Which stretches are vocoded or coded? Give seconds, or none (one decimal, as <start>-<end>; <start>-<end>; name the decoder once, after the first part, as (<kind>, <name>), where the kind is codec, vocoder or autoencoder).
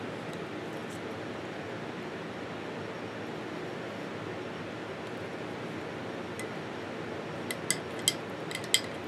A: 0.8-1.6 (vocoder, BigVGAN v2)